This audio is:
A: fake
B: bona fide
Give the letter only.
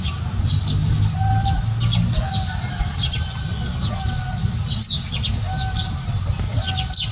B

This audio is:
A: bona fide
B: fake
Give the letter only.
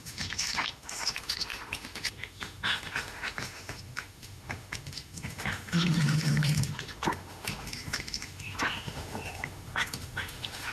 B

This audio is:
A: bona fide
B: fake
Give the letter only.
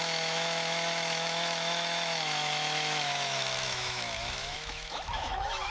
B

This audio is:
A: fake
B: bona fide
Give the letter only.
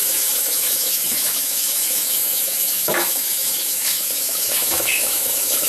A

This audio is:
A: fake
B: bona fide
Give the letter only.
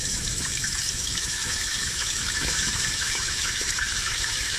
A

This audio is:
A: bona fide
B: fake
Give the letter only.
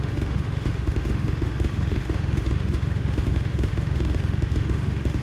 B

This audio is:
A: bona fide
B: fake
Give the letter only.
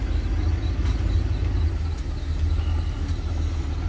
A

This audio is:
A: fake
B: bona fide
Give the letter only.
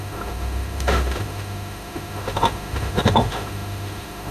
A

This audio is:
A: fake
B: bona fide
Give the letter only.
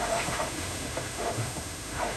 A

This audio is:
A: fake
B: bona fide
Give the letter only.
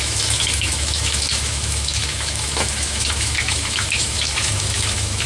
A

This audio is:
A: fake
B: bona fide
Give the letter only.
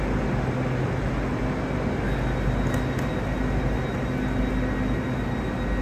B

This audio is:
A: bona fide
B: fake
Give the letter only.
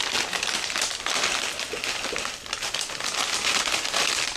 A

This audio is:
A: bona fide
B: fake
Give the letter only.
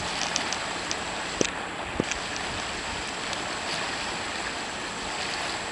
A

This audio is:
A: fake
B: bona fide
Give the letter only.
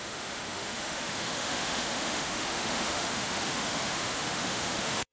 A